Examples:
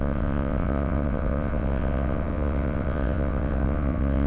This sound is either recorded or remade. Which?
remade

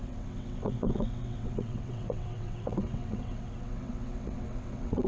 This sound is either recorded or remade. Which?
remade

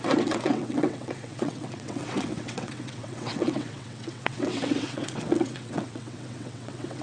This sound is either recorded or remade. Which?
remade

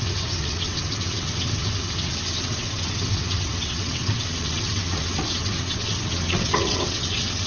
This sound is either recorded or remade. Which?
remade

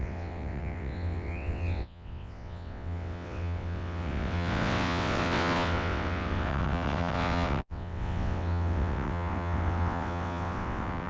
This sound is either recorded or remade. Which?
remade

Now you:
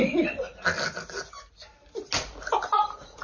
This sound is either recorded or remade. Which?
recorded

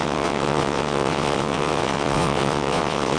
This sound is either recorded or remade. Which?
remade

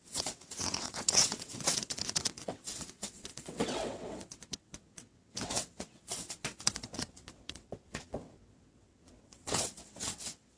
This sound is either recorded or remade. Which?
remade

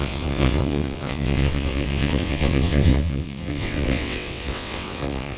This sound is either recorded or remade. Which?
remade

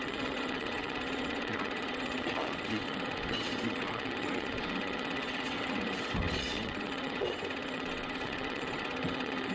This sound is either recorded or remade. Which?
remade